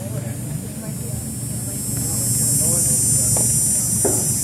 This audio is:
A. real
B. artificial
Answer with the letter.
A